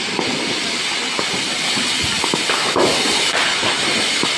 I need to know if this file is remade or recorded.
recorded